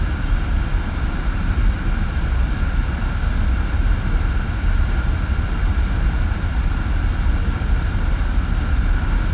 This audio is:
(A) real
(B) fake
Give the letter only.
A